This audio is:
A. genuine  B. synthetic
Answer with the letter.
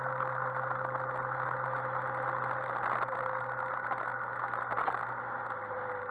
A